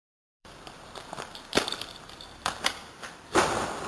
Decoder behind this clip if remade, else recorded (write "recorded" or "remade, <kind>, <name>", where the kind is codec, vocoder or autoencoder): remade, vocoder, BigVGAN v2